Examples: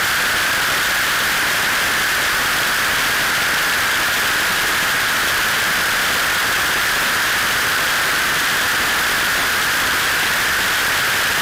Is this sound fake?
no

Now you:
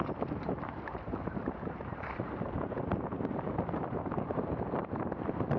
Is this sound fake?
yes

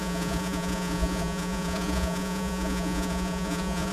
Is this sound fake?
yes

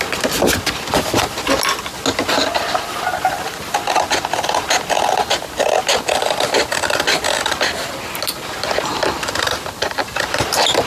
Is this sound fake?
no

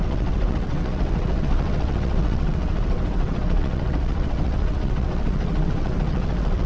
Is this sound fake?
yes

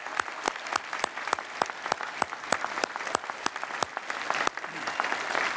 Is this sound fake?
no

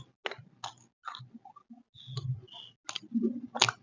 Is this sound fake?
no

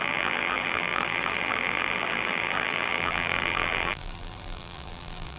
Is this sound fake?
yes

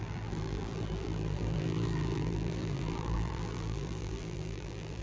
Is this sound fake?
yes